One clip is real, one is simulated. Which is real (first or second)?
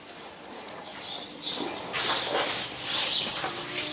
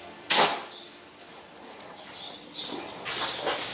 second